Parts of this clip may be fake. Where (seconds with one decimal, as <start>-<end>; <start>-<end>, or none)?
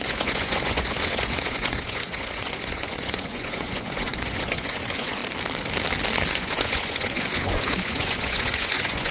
0.0-5.2; 6.3-9.1